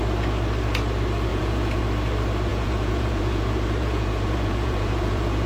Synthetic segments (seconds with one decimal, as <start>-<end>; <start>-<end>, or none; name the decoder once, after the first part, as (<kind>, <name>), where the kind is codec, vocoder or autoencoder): 1.3-1.8 (vocoder, Vocos); 2.5-5.5